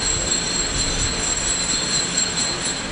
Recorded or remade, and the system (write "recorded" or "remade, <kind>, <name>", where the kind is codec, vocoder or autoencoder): recorded